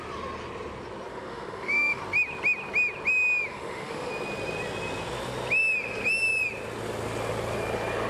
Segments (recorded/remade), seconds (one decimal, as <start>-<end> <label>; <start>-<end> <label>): 0.0-1.1 recorded; 1.1-2.0 remade; 2.0-3.5 recorded; 3.5-4.1 remade; 4.1-8.1 recorded